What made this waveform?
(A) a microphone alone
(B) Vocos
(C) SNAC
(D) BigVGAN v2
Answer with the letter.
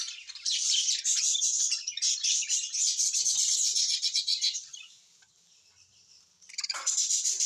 D